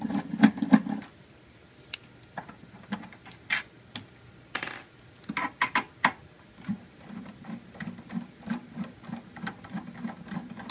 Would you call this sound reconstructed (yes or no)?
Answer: no